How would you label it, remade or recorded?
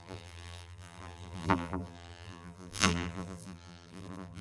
remade